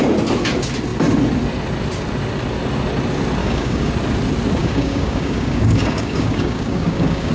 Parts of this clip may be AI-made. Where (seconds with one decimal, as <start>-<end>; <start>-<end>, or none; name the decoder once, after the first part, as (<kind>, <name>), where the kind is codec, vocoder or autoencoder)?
3.4-3.9 (codec, DAC); 4.6-7.3